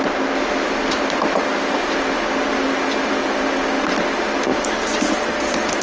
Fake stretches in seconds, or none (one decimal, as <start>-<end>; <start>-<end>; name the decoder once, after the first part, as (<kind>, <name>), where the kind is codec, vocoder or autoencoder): none